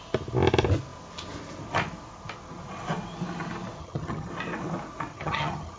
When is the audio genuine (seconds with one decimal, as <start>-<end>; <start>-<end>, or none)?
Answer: 0.0-3.8; 4.3-5.1

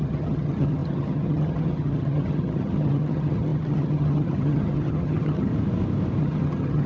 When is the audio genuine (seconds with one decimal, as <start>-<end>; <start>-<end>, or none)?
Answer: 5.5-6.2

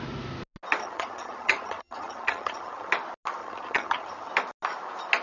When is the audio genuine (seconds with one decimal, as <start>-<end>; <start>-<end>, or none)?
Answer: 0.0-0.8; 2.9-3.4; 4.3-5.2

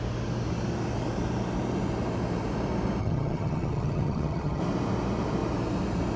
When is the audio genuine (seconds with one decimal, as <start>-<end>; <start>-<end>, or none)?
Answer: 0.0-3.0; 4.6-6.2